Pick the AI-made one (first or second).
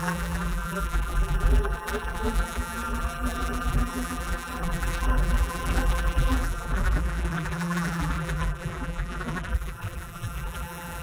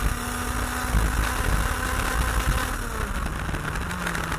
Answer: first